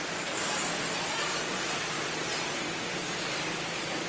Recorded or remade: recorded